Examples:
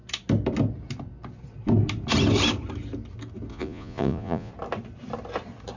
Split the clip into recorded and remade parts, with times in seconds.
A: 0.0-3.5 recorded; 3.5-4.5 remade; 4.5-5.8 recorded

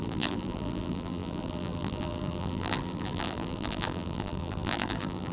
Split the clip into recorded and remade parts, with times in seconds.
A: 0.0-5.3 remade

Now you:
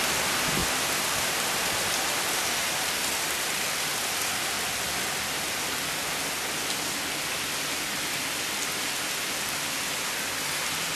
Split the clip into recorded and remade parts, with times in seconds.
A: 0.0-0.6 recorded; 0.6-5.5 remade; 5.5-11.0 recorded